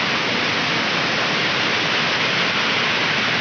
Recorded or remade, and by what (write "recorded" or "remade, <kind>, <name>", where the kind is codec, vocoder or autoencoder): recorded